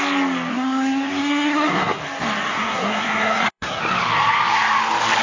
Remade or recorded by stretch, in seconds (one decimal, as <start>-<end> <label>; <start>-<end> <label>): 0.0-0.5 recorded; 0.5-2.0 remade; 2.0-2.5 recorded; 2.5-3.8 remade; 3.8-5.2 recorded